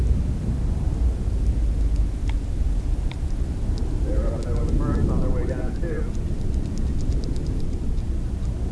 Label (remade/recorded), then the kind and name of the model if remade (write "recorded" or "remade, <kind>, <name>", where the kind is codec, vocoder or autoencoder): recorded